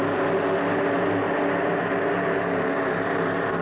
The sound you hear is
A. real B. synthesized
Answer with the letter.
A